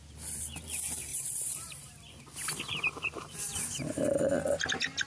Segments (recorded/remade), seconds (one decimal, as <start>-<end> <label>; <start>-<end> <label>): 0.0-1.1 recorded; 1.1-4.2 remade; 4.2-5.1 recorded